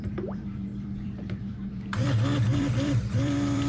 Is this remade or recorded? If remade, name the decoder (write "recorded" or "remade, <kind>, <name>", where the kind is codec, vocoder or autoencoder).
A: remade, vocoder, BigVGAN v2